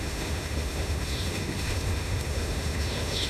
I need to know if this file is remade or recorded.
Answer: remade